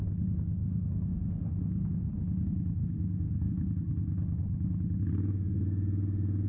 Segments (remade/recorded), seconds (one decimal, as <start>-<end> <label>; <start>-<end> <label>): 0.0-0.6 recorded; 0.6-2.1 remade; 2.1-2.8 recorded; 2.8-3.5 remade; 3.5-6.5 recorded